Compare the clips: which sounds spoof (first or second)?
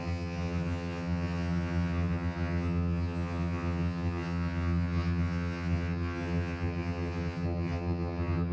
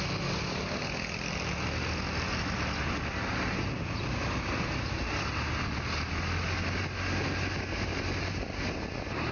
first